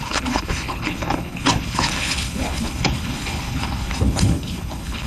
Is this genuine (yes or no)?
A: no